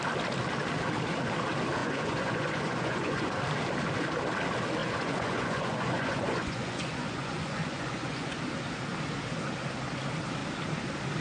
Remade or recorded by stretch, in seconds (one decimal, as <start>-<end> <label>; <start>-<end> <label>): 0.0-1.8 recorded; 1.8-3.4 remade; 3.4-4.8 recorded; 4.8-8.4 remade; 8.4-11.2 recorded